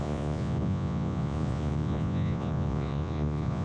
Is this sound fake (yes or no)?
yes